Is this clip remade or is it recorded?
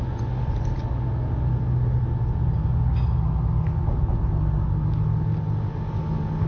recorded